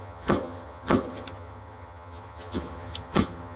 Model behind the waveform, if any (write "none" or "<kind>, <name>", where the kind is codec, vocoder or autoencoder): vocoder, HiFi-GAN